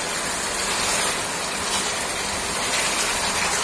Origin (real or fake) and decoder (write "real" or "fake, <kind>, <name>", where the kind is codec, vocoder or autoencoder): real